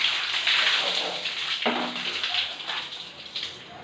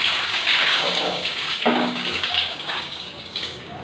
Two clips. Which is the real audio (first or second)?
first